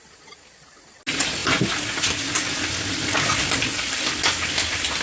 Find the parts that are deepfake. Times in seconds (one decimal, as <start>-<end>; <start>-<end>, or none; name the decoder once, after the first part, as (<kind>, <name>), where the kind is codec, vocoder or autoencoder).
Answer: none